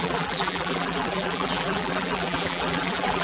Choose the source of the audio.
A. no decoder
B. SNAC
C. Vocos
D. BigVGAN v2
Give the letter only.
D